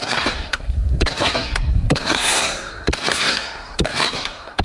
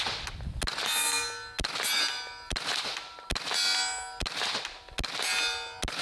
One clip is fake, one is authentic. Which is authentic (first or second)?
second